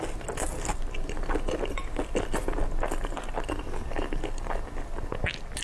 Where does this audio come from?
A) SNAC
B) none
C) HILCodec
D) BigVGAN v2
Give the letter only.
B